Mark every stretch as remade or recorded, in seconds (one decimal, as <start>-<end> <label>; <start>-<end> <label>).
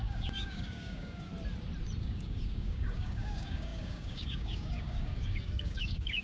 0.0-1.3 remade; 1.3-2.0 recorded; 2.0-6.2 remade